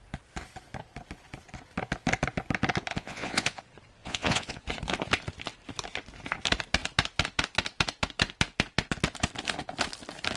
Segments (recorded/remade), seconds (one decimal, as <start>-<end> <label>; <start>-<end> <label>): 0.0-2.9 recorded; 2.9-3.6 remade; 3.6-4.0 recorded; 4.0-4.6 remade; 4.6-10.4 recorded